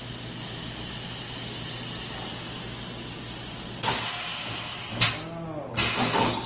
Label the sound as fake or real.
real